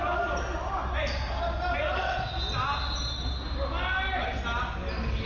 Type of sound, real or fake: real